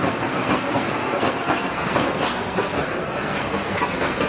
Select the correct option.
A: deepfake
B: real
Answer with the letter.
A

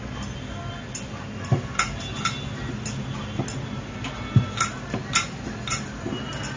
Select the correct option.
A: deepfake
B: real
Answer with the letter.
B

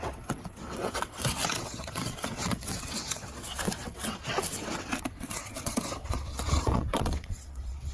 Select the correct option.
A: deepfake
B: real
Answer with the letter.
A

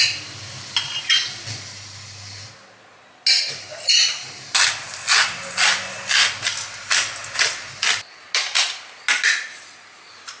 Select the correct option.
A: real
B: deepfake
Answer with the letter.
A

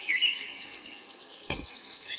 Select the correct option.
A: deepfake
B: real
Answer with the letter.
A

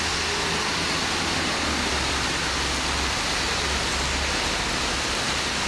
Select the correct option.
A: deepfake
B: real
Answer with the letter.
B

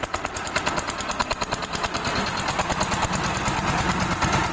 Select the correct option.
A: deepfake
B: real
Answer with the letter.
B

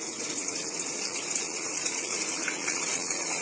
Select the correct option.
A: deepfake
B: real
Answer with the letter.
A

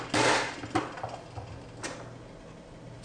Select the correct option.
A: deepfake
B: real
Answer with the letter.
B